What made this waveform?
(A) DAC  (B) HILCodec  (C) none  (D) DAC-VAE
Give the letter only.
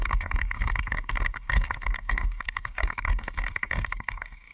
A